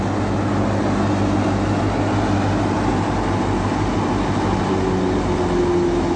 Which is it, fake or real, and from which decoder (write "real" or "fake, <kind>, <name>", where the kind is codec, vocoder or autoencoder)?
real